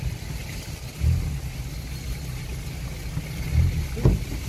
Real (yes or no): yes